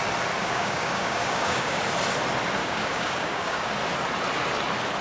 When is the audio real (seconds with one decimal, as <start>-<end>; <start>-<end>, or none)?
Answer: 0.0-0.4; 1.8-2.6; 3.7-5.0